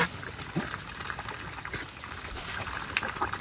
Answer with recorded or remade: recorded